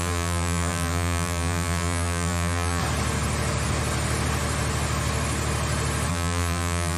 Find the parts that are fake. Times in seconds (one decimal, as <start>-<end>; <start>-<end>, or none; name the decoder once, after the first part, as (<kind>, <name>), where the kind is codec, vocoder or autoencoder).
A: 0.0-2.8 (vocoder, BigVGAN v2); 6.1-7.0